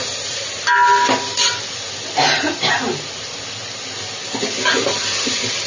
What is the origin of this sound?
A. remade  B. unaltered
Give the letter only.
B